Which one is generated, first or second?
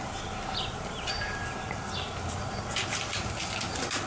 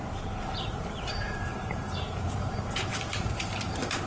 second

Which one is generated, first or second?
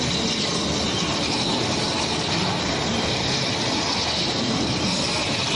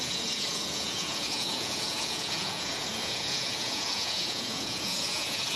second